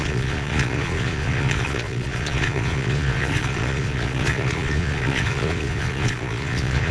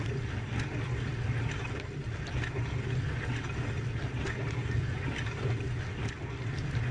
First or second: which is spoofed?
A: first